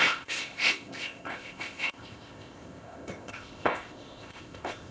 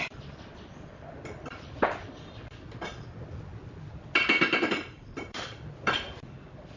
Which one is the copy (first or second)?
first